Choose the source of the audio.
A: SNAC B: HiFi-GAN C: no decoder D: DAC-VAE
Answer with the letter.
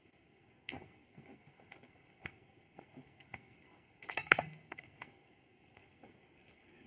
A